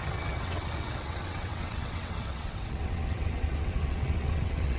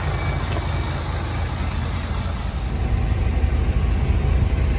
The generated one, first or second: first